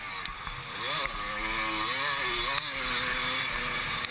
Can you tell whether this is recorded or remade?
recorded